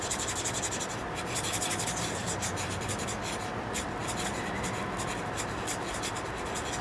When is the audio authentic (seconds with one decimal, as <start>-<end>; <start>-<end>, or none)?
0.0-2.2; 3.1-6.8